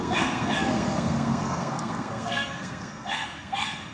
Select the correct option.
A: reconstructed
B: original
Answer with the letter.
A